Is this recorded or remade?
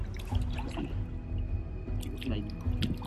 recorded